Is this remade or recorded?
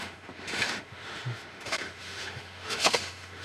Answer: remade